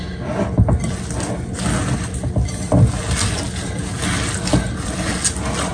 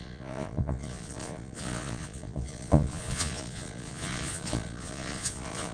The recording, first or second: first